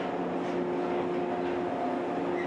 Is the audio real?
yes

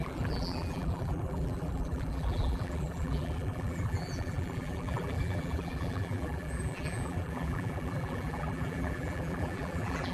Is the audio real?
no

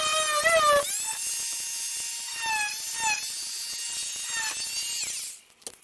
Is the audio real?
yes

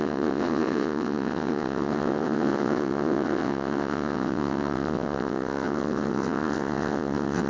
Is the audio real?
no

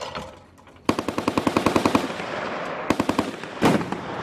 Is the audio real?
no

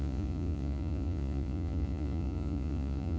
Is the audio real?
no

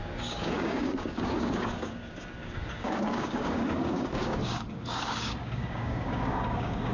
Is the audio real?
no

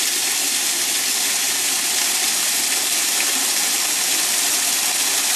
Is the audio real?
yes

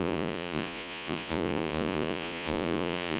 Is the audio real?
no